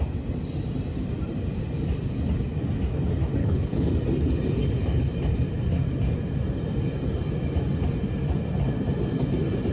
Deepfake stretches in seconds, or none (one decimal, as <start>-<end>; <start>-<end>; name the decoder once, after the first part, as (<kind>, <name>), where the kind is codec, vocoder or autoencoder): 3.4-3.9 (codec, HILCodec)